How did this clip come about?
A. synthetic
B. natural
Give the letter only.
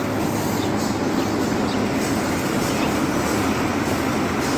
B